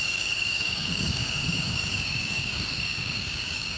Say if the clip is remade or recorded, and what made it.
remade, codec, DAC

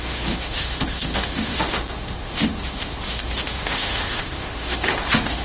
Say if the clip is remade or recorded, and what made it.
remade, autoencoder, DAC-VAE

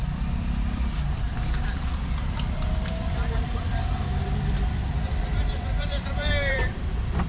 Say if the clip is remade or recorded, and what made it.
remade, vocoder, BigVGAN v2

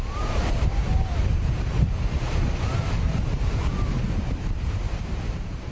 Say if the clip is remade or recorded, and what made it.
remade, vocoder, BigVGAN v2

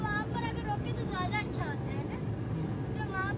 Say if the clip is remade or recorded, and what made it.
recorded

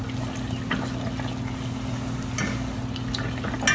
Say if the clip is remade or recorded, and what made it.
recorded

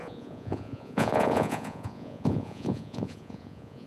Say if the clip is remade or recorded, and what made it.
remade, vocoder, Vocos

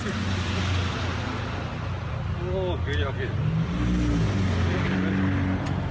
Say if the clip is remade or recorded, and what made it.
recorded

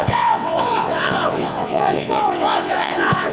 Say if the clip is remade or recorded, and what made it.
remade, vocoder, WaveNeXt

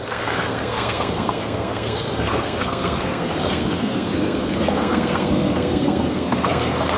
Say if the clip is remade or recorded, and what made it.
remade, codec, SNAC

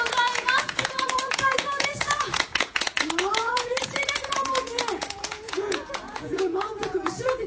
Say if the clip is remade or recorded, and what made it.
remade, vocoder, Vocos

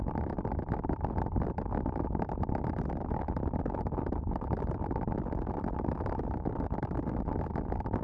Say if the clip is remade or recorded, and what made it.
recorded